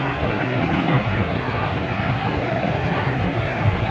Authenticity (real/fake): fake